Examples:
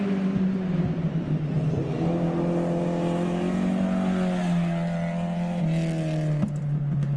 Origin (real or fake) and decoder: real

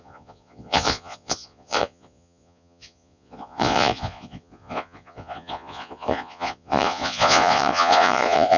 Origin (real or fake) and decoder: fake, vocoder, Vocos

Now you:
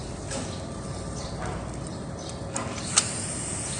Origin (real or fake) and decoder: real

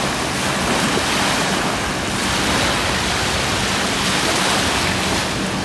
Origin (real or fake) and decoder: real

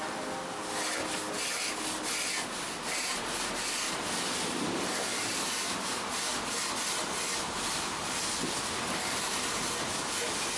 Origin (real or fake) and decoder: real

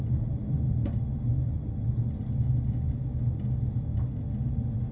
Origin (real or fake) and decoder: real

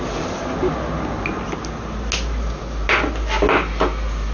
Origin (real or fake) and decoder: real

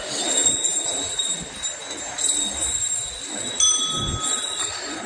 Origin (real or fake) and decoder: real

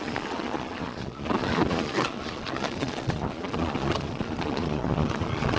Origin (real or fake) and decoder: fake, vocoder, Vocos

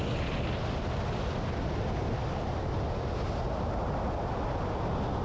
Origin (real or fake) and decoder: real